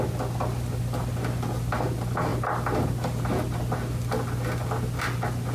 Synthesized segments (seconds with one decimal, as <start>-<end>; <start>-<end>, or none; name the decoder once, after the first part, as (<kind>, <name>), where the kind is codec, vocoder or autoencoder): none